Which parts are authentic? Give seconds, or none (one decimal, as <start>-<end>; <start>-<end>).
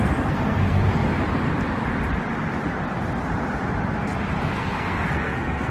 1.0-4.4